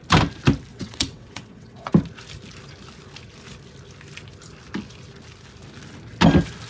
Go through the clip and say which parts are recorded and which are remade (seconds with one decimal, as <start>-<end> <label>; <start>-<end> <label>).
0.0-0.7 recorded; 0.7-1.9 remade; 1.9-6.7 recorded